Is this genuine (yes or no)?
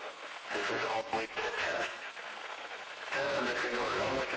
no